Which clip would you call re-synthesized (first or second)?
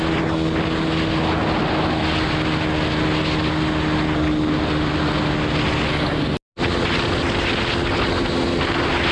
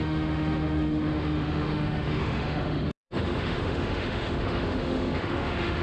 second